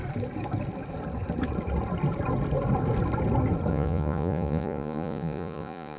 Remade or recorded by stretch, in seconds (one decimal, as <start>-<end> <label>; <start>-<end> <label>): 0.0-3.7 recorded; 3.7-6.0 remade